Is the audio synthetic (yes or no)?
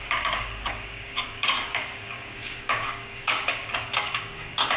yes